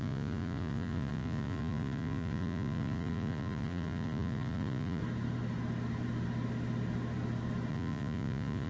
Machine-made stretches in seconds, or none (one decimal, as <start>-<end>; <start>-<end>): 0.0-5.0; 7.7-8.7

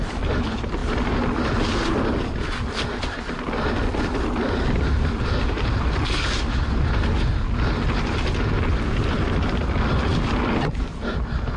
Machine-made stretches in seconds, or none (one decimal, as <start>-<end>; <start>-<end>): none

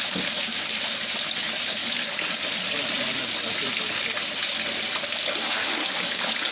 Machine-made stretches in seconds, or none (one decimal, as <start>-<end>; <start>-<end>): 1.8-2.3; 5.6-6.5

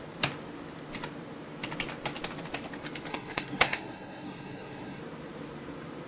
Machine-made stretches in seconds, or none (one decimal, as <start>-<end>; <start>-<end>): 3.1-5.0

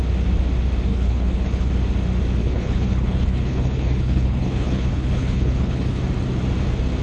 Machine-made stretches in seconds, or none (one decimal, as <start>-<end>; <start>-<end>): 0.9-1.7; 2.4-6.0

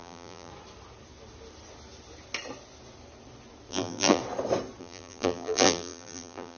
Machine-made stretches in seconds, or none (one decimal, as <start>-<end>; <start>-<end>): 0.0-0.5; 3.7-4.2; 4.8-6.6